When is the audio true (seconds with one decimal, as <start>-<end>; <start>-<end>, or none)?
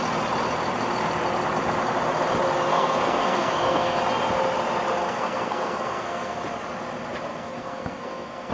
0.0-2.7; 4.0-5.0; 6.4-7.3